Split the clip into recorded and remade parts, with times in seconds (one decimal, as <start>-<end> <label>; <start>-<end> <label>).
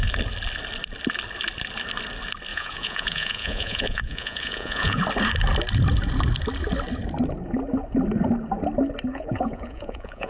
0.0-2.5 recorded; 2.5-5.0 remade; 5.0-9.1 recorded; 9.1-10.3 remade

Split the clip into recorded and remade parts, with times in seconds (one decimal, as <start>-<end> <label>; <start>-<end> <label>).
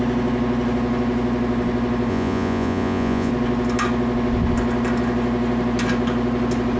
0.0-2.1 recorded; 2.1-3.3 remade; 3.3-6.8 recorded